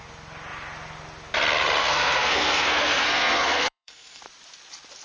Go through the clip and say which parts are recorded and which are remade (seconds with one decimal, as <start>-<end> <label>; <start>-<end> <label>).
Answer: 0.0-1.8 recorded; 1.8-4.2 remade; 4.2-5.0 recorded